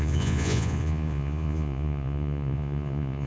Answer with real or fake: fake